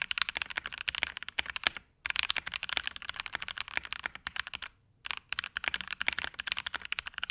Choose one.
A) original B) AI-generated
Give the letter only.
A